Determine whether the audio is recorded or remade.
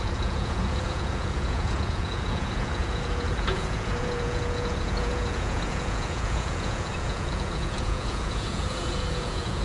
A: remade